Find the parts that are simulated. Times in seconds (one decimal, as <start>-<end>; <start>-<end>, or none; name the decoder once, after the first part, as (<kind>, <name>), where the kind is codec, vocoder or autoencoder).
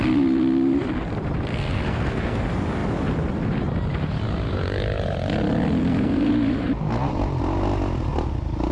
1.5-2.4 (codec, SNAC); 5.8-6.3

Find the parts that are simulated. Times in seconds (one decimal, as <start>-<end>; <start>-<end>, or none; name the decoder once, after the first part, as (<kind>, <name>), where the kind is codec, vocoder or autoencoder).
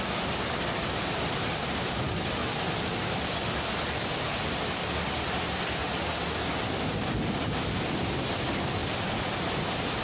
0.0-2.4 (vocoder, BigVGAN v2); 4.2-5.8; 7.9-10.0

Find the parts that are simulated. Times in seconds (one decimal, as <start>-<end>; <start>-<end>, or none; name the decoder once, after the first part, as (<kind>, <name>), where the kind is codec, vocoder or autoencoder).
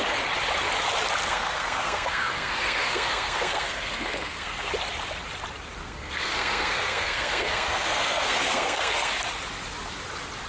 1.2-4.7 (codec, SNAC); 5.8-9.1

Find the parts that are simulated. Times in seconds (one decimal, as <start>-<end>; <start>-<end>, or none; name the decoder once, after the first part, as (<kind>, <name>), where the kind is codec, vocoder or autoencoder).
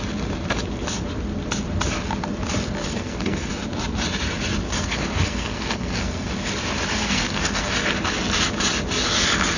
2.8-3.5 (codec, SNAC); 4.7-6.3; 7.0-7.7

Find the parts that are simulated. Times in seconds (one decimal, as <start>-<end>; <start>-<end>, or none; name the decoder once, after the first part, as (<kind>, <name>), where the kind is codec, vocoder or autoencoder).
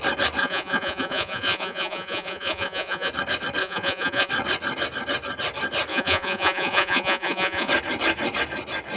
0.4-3.1 (vocoder, Vocos); 3.6-4.3; 5.9-7.7